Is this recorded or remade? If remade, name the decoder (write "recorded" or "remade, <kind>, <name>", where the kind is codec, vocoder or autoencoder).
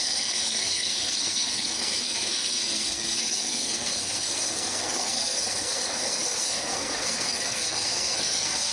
remade, codec, SNAC